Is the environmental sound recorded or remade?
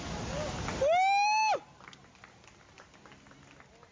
recorded